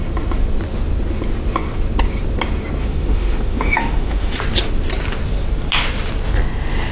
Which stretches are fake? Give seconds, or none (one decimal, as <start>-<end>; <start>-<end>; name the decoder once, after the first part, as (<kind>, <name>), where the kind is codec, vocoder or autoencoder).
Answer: 2.8-4.4 (autoencoder, DAC-VAE)